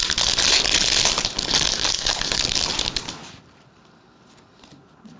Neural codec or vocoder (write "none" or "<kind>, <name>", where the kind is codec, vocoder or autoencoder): none